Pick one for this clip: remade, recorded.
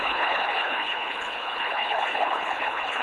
remade